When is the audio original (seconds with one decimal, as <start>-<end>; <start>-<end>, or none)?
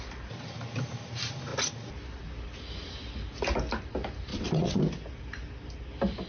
0.0-4.3; 4.8-6.3